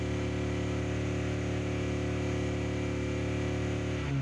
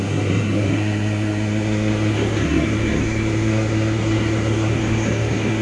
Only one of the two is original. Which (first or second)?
first